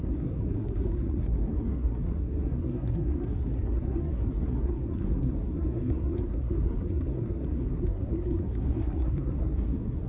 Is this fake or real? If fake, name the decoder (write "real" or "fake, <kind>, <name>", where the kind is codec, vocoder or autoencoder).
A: fake, codec, SNAC